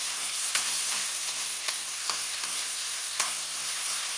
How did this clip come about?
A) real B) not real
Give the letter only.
B